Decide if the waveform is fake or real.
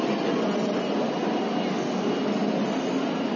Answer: real